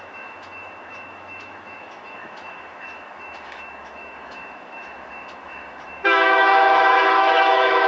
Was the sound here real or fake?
fake